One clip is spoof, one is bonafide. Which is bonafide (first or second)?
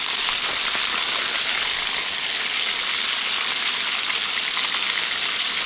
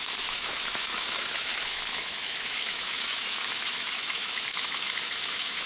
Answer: first